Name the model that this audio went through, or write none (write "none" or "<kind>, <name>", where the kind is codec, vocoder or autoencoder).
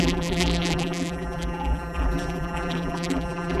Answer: vocoder, BigVGAN v2